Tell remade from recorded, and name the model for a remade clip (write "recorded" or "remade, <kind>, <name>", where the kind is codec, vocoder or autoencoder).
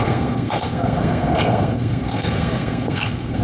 remade, codec, SNAC